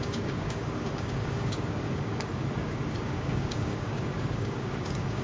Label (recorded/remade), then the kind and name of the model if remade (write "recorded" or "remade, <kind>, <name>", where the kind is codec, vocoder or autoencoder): remade, codec, DAC